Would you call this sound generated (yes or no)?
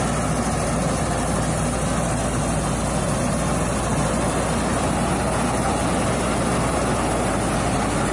no